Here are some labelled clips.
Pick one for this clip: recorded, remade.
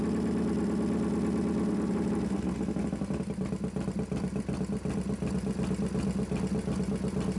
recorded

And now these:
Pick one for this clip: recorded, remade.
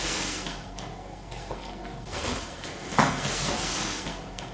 remade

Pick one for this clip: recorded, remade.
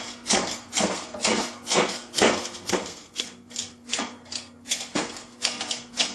remade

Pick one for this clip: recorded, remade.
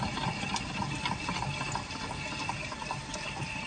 recorded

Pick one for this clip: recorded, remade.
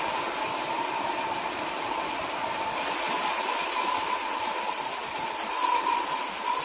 recorded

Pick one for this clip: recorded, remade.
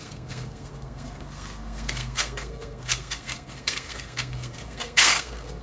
remade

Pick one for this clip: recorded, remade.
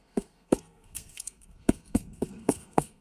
remade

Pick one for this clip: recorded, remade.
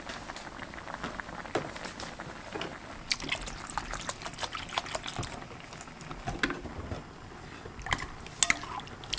recorded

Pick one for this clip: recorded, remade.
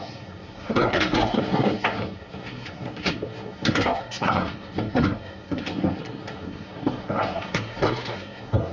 remade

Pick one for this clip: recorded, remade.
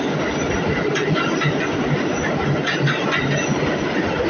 recorded